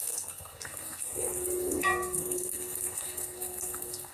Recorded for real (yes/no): no